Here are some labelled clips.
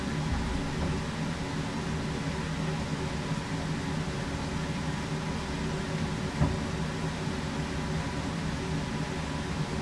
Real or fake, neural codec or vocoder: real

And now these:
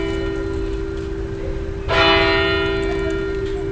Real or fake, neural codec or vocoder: real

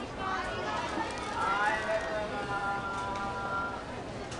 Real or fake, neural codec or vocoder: real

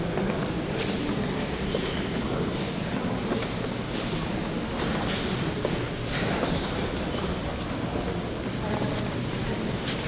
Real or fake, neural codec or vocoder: fake, vocoder, BigVGAN v2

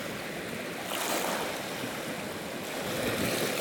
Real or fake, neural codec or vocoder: real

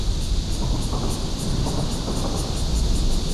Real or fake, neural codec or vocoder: real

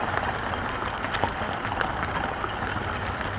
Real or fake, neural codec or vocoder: real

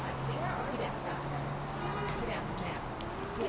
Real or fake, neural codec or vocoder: real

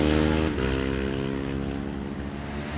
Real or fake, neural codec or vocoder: real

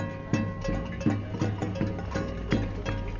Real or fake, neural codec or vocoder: real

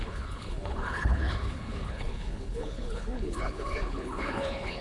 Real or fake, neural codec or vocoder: fake, codec, HILCodec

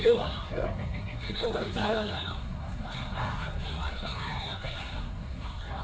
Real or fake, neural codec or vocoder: fake, codec, SNAC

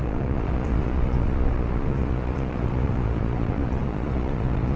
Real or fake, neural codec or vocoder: fake, vocoder, Vocos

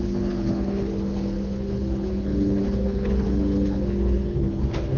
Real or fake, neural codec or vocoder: fake, codec, HILCodec